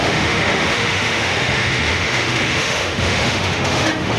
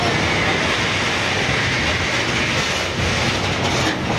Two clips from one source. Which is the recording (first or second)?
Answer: second